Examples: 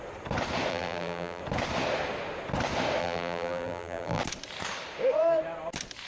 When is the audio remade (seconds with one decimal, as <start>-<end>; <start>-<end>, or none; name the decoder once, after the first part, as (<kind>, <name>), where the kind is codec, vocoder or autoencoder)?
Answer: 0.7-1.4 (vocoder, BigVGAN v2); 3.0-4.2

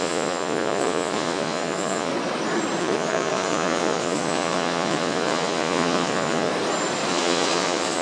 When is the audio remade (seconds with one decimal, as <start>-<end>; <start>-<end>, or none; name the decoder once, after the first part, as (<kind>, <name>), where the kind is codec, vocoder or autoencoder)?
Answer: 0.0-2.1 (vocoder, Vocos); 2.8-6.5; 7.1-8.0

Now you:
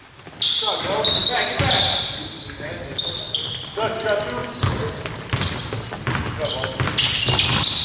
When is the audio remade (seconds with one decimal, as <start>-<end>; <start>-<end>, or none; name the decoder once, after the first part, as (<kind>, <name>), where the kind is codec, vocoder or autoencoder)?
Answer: none